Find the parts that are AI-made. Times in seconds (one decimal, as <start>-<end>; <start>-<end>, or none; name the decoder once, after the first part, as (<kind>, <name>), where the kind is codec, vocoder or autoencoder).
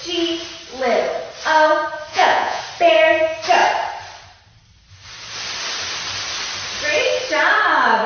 2.1-2.6 (vocoder, Vocos)